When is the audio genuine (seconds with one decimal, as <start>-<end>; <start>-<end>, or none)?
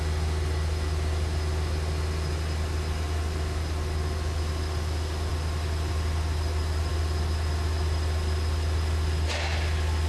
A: 0.0-10.1